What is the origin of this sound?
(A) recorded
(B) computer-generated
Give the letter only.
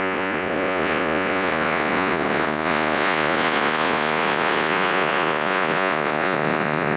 B